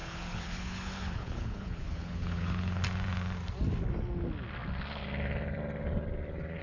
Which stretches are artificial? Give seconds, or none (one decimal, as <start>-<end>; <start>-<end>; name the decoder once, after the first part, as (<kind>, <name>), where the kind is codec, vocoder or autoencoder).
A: 0.0-2.8 (codec, HILCodec)